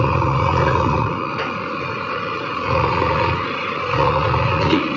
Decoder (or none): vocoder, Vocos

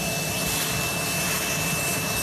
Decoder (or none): none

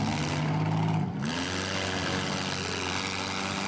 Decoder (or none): none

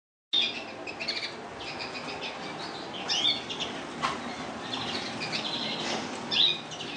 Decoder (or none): none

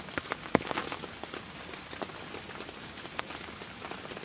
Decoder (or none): none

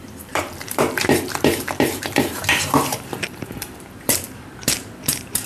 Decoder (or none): vocoder, BigVGAN v2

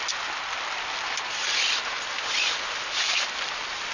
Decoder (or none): vocoder, BigVGAN v2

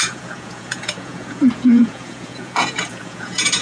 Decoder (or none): vocoder, Vocos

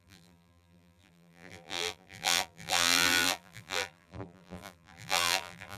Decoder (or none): vocoder, BigVGAN v2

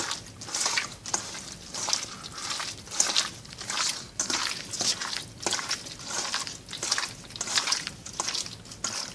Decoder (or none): none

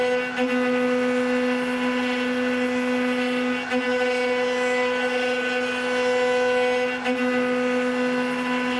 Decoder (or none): none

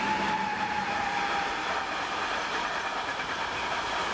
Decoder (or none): none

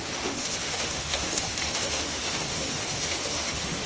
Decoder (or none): autoencoder, DAC-VAE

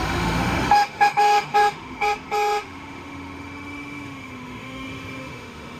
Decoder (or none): autoencoder, DAC-VAE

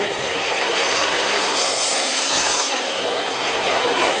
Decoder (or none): codec, SNAC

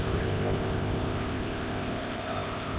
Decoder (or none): codec, ZipCodec